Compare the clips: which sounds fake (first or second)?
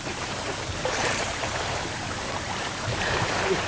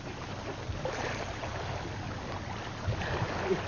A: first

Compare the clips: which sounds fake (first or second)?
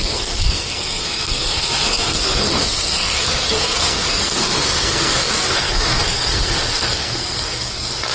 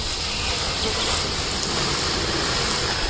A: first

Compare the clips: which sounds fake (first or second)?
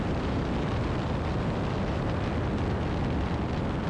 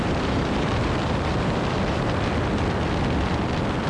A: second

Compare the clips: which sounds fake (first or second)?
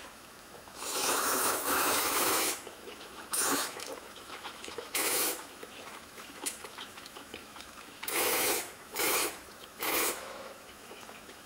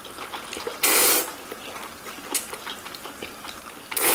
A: first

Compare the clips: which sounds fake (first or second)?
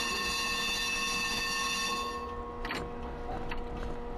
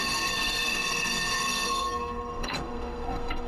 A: second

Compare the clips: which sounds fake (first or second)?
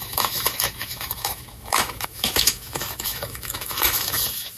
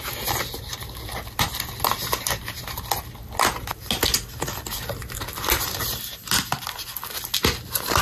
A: first